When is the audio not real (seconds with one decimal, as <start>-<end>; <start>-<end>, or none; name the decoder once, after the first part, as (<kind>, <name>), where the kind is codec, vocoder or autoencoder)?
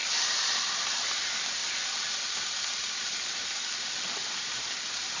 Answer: none